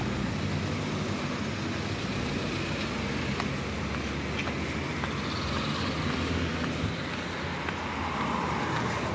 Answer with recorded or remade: recorded